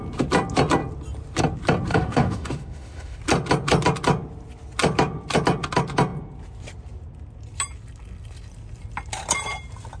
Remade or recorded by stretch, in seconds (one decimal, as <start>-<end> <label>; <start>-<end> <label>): 0.0-1.9 recorded; 1.9-3.2 remade; 3.2-10.0 recorded